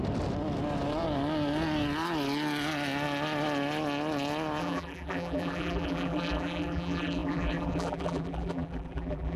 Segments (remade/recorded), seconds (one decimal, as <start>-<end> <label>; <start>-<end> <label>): 0.0-4.6 recorded; 4.6-9.4 remade